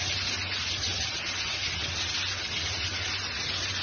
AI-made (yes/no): no